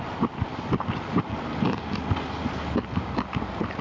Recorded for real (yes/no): yes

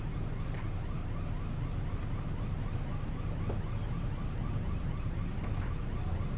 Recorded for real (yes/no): yes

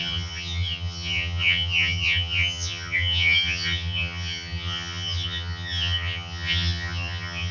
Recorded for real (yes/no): no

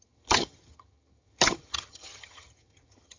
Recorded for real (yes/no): no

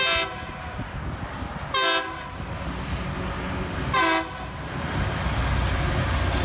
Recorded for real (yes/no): yes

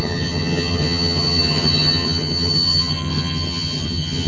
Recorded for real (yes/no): no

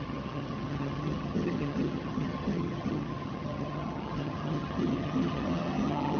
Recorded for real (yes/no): no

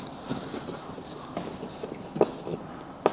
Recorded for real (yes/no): yes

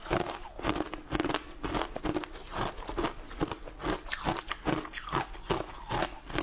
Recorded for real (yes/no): yes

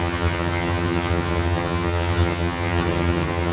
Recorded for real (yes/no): no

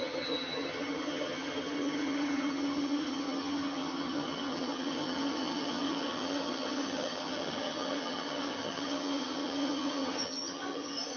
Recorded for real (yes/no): no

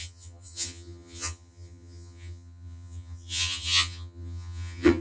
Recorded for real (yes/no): no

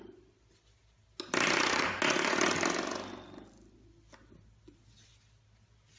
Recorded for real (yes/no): yes